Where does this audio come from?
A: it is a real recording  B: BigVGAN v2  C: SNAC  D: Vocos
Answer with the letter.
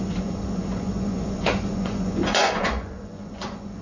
D